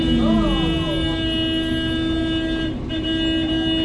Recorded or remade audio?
recorded